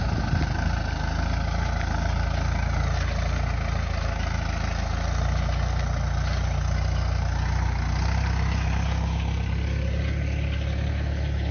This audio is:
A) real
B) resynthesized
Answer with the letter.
A